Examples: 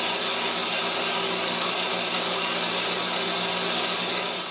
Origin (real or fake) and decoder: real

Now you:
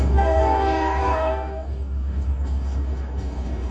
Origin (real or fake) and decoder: fake, codec, DAC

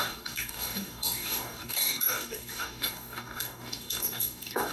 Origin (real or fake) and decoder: fake, codec, DAC